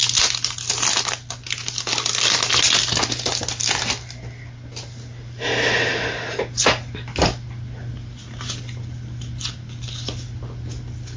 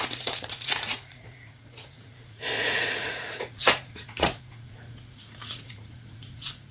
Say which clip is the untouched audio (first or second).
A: first